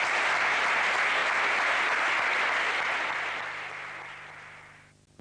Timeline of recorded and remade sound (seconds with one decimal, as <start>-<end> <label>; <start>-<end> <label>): 0.0-5.2 recorded